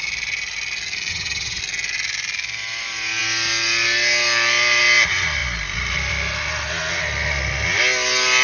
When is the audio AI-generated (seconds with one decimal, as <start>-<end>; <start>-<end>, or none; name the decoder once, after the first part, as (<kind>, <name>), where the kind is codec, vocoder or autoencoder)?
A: 1.1-1.6 (vocoder, HiFi-GAN)